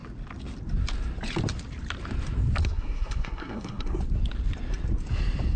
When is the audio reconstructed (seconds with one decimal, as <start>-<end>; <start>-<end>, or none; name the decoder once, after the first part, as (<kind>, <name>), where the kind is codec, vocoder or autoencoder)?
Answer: 2.6-4.0 (codec, SNAC)